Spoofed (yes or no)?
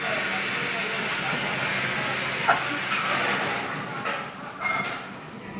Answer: no